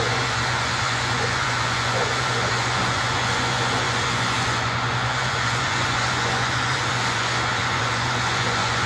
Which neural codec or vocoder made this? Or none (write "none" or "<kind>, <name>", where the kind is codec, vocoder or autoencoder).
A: vocoder, Vocos